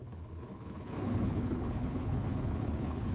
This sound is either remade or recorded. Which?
remade